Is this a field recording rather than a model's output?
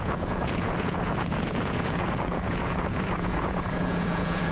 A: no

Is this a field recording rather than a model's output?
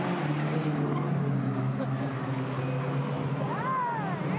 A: yes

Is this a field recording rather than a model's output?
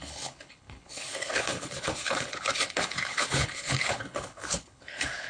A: no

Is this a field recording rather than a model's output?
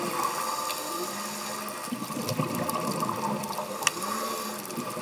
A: yes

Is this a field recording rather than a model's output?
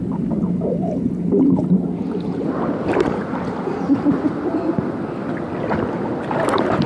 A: yes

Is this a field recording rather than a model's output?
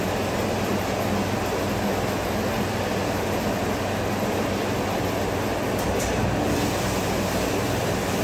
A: yes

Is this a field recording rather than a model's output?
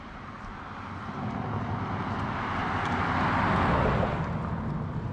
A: yes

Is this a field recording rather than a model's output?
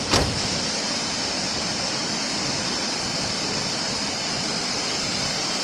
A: yes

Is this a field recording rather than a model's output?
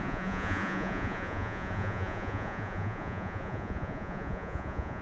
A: no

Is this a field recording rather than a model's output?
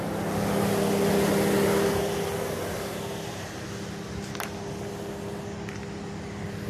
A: yes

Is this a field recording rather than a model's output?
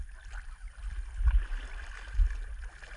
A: yes